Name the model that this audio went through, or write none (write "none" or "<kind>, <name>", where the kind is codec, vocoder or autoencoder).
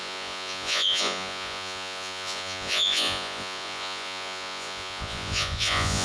vocoder, Vocos